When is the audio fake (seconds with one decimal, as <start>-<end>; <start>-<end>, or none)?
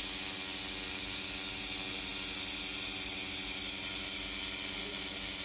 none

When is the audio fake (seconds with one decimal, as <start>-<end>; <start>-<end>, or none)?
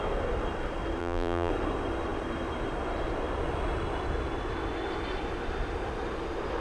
1.0-1.5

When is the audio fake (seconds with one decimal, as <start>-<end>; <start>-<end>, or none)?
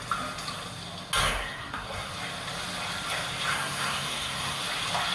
1.2-2.1; 3.5-4.6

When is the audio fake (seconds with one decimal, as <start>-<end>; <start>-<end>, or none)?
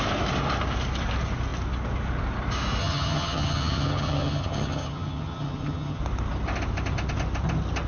2.8-6.0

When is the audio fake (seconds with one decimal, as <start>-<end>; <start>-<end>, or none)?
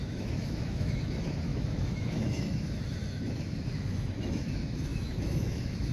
0.0-5.9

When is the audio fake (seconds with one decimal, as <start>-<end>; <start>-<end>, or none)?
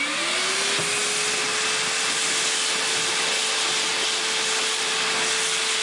none